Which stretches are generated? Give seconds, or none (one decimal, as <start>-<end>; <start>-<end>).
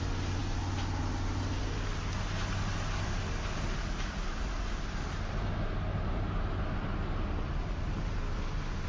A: none